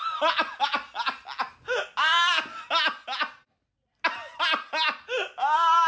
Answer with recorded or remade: recorded